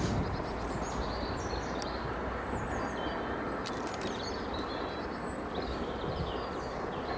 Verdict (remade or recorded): recorded